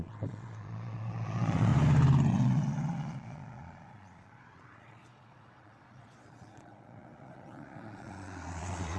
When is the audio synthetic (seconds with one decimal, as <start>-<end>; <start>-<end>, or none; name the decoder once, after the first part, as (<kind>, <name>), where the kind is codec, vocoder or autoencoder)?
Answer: 0.0-1.7 (vocoder, Vocos); 2.3-9.0